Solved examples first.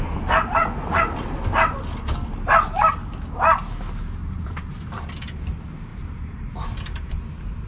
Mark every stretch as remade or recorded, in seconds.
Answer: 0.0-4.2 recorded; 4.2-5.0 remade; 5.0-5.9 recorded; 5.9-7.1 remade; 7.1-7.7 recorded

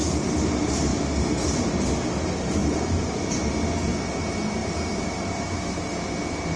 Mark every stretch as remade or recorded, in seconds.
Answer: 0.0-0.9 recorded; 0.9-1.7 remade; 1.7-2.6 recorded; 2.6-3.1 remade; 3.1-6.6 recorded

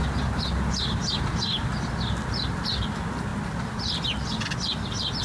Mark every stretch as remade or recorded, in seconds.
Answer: 0.0-5.2 recorded